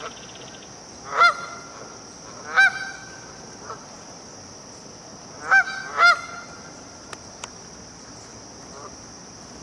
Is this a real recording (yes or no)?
yes